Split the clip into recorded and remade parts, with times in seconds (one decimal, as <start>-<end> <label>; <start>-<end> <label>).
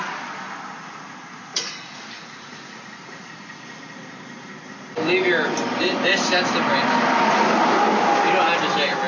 0.0-1.5 recorded; 1.5-3.3 remade; 3.3-9.1 recorded